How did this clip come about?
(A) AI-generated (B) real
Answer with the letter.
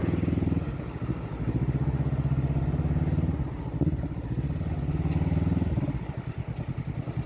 B